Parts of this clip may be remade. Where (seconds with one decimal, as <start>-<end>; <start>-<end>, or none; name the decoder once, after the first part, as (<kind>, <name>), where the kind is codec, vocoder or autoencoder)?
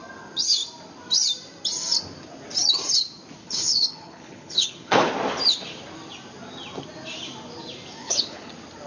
3.4-5.1 (codec, HILCodec); 8.0-8.5